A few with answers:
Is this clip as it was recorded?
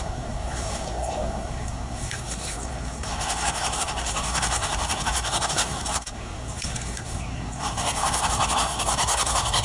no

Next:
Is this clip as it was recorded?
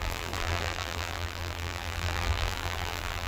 no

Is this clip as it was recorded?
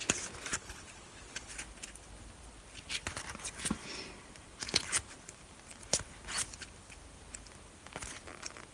yes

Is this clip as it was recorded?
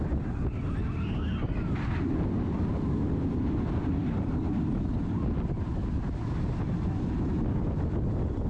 yes